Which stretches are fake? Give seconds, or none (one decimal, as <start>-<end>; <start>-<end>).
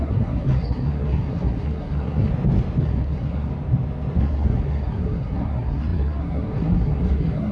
0.0-2.3; 2.8-3.5; 4.2-7.5